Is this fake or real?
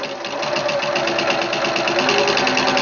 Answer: real